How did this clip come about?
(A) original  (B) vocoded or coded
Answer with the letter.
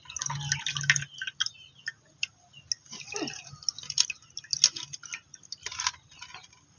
A